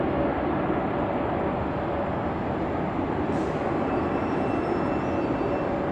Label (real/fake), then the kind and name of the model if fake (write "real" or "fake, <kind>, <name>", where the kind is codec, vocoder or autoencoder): real